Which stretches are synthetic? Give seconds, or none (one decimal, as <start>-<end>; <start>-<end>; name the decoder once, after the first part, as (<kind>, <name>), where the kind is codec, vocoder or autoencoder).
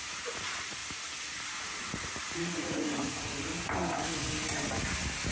0.0-0.8 (vocoder, Vocos); 1.6-3.5